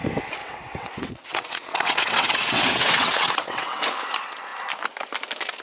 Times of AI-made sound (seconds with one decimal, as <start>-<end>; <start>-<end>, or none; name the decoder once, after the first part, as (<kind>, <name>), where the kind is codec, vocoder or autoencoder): 0.4-3.8 (vocoder, WaveNeXt)